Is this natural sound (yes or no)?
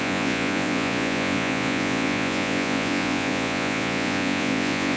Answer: no